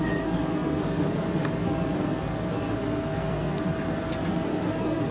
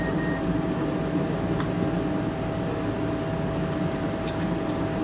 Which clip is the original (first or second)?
second